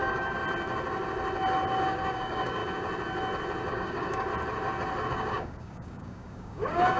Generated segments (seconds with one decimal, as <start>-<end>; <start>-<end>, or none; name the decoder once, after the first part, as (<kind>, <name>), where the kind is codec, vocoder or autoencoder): 0.0-0.4 (codec, DAC); 1.7-2.6; 3.7-4.3; 5.1-7.0